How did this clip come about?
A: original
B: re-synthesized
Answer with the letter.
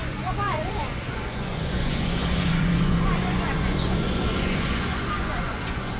B